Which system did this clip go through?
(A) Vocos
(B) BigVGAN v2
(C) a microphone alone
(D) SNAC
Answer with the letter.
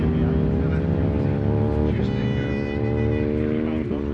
C